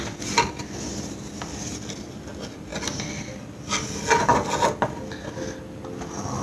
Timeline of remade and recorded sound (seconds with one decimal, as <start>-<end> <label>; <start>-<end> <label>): 0.0-6.4 recorded